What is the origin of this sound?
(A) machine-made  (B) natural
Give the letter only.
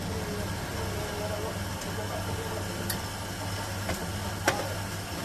B